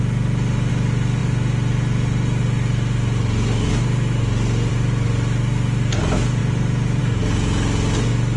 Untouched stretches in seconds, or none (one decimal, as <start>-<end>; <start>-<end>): 0.0-8.4